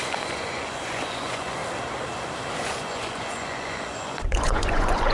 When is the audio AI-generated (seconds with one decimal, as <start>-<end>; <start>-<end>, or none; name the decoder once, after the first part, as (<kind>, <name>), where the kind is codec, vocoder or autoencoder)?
0.0-1.6 (vocoder, Vocos); 2.6-5.1